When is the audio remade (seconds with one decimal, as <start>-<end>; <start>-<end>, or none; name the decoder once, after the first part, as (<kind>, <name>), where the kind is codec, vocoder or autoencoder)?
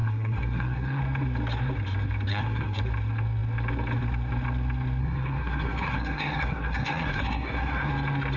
0.0-1.0 (codec, SNAC); 2.3-2.8; 5.0-7.9